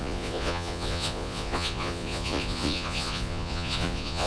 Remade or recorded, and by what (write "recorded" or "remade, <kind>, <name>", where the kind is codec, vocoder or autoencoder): remade, vocoder, Vocos